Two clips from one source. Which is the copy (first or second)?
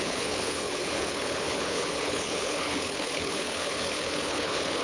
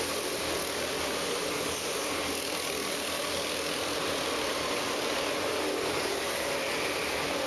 first